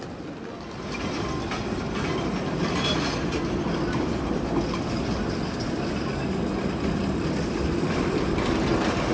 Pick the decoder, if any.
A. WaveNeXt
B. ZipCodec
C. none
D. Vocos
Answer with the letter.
C